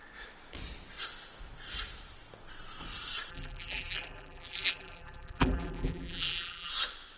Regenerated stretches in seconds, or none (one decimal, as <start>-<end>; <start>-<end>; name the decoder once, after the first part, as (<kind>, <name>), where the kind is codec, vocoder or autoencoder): 3.3-6.7 (vocoder, BigVGAN v2)